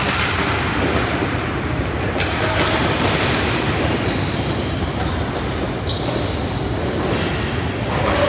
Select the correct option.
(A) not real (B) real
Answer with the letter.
B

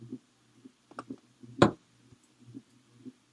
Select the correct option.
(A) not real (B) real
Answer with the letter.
B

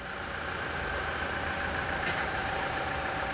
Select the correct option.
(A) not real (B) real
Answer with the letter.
A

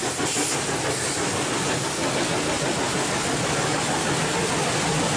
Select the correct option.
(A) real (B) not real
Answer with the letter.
A